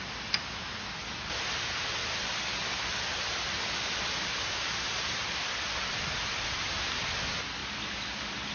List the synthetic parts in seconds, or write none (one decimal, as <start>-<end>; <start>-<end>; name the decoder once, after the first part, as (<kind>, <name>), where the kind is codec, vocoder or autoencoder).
none